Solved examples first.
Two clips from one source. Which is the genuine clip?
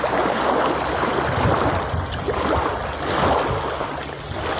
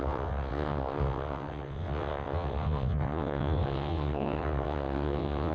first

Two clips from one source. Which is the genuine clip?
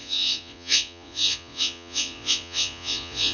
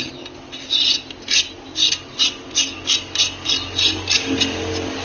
second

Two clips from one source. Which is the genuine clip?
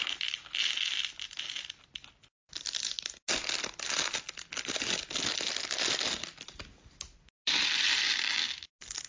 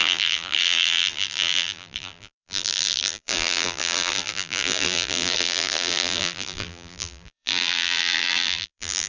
first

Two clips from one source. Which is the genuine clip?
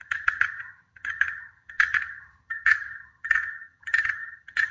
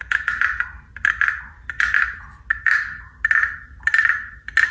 second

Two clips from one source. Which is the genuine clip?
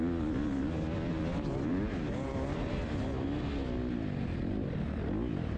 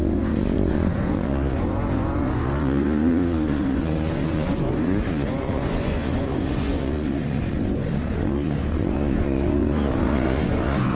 first